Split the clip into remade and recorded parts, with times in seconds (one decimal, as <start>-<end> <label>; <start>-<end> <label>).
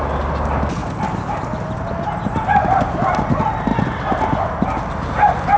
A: 0.0-5.6 recorded